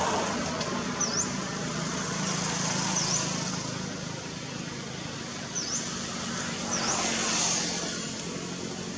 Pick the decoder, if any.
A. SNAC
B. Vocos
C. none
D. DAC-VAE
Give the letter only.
C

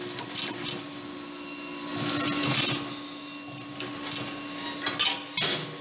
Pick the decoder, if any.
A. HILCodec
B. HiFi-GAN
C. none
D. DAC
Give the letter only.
C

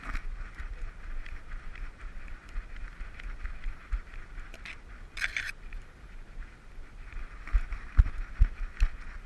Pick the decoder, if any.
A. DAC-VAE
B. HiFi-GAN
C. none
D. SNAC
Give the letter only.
C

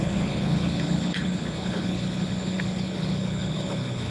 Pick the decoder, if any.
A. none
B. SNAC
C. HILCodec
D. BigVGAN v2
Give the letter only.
C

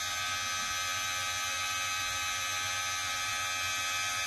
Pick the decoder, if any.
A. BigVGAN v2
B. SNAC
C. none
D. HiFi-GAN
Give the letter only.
C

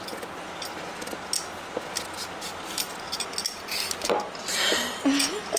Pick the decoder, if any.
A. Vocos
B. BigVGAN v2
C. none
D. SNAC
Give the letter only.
C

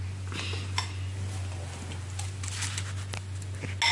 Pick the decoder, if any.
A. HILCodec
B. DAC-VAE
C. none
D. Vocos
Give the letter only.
C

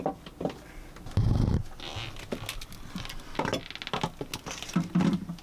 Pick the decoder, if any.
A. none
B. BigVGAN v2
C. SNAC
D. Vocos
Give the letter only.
A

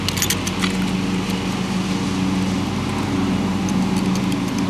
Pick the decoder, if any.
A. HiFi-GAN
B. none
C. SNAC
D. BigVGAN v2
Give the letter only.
B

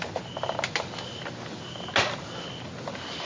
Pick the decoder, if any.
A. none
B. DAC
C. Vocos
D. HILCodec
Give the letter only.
A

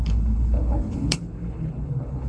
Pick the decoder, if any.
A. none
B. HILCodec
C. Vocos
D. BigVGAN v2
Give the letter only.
B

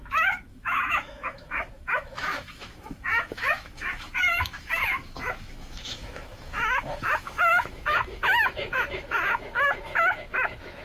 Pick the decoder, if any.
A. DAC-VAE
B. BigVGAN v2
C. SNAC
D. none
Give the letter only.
A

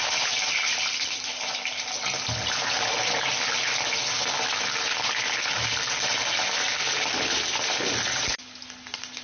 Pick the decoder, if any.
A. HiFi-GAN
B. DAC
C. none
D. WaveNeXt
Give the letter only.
C